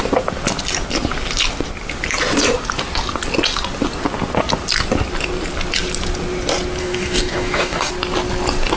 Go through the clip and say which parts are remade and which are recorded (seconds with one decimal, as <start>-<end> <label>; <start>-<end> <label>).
0.0-6.8 recorded; 6.8-7.9 remade; 7.9-8.8 recorded